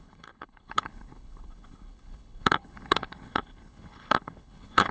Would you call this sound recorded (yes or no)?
no